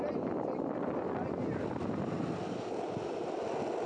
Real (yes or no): yes